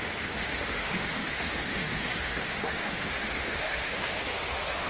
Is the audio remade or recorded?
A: remade